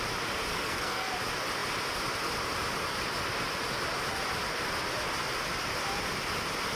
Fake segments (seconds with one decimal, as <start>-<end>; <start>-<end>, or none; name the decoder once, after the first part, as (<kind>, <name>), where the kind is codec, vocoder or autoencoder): 0.5-1.1 (codec, SNAC)